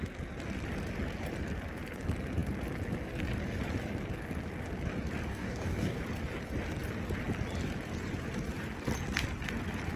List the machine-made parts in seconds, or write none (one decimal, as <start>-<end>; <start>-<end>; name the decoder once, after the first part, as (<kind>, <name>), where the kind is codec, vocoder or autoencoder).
5.3-6.0 (codec, DAC)